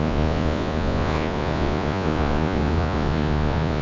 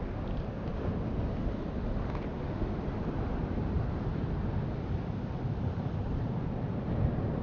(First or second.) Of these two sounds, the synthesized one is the first